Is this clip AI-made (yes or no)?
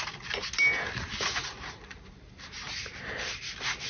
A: no